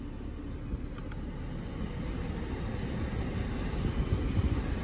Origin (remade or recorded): recorded